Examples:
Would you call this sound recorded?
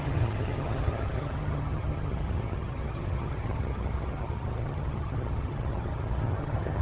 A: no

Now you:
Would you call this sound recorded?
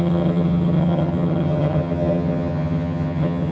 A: no